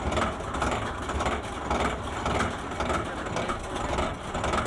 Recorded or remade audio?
recorded